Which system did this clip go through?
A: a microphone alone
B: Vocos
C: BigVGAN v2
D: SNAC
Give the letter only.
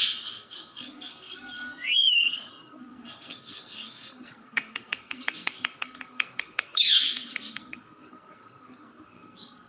D